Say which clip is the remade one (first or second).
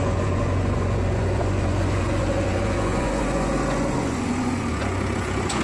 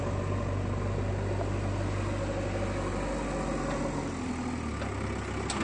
first